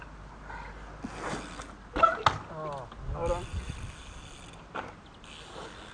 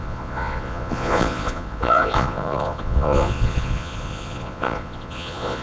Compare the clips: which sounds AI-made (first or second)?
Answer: second